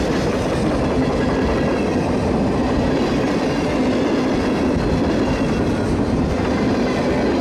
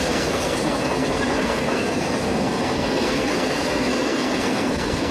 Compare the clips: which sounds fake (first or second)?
second